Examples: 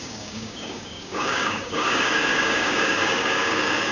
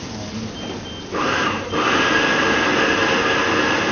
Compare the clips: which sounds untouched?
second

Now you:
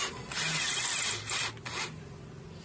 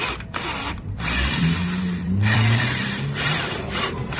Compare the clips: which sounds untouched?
first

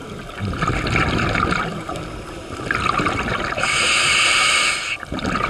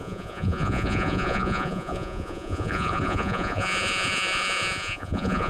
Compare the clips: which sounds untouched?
first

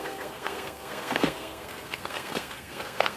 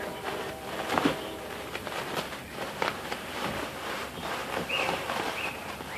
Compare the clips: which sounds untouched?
second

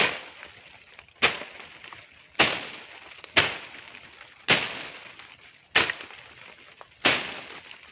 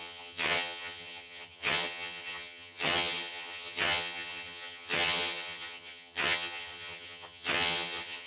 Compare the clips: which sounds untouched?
first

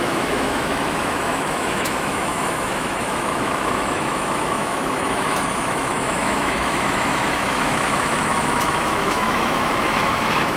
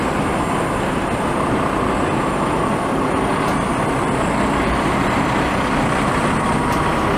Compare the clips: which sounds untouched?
second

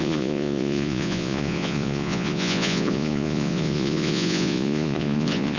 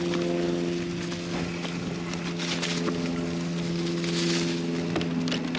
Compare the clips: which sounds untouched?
second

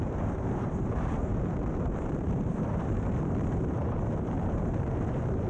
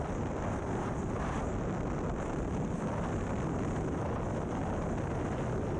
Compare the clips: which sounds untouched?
second